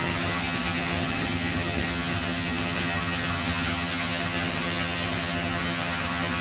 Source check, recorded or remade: remade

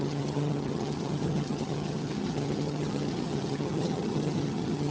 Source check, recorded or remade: remade